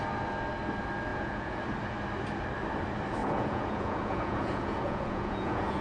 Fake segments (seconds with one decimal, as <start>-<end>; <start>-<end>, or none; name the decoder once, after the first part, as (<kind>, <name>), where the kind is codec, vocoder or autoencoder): 1.1-1.6 (vocoder, Vocos); 3.2-5.8